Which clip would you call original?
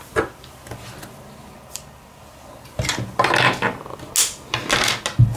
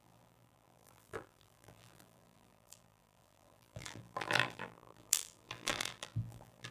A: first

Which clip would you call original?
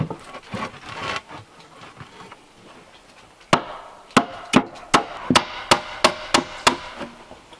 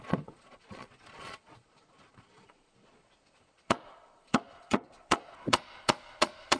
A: first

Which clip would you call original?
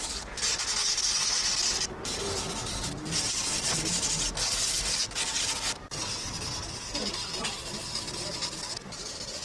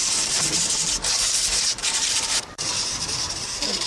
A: first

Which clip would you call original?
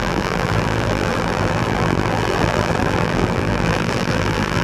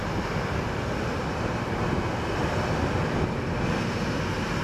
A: second